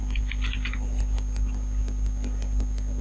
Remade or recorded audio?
recorded